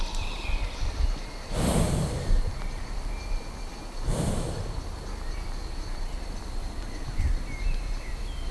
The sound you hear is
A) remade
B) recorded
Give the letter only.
B